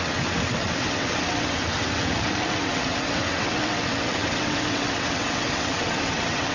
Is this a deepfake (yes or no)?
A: yes